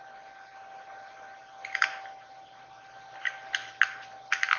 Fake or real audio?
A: real